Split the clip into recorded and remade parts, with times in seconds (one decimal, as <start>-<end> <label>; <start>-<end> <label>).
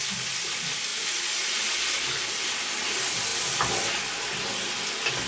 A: 0.0-5.3 recorded